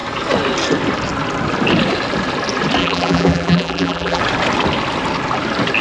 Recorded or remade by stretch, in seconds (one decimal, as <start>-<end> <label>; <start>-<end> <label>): 0.0-2.8 recorded; 2.8-4.2 remade; 4.2-5.8 recorded